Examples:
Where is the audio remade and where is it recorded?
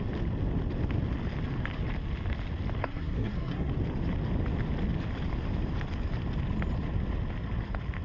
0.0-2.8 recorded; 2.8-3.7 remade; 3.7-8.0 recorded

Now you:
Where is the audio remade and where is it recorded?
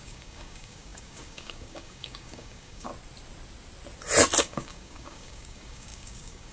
0.0-2.9 remade; 2.9-4.4 recorded; 4.4-6.5 remade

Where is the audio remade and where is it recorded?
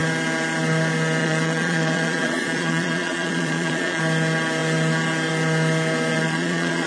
0.0-1.2 recorded; 1.2-4.0 remade; 4.0-6.1 recorded; 6.1-6.9 remade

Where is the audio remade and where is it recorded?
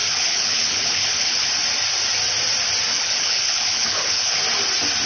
0.0-1.5 remade; 1.5-2.9 recorded; 2.9-4.4 remade; 4.4-5.1 recorded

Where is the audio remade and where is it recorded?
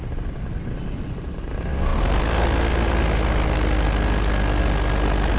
0.0-5.4 recorded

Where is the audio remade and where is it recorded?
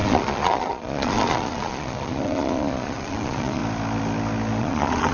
0.0-3.6 remade; 3.6-4.6 recorded; 4.6-5.1 remade